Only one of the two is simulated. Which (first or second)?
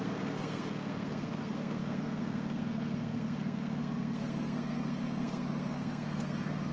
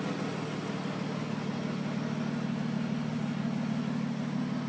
first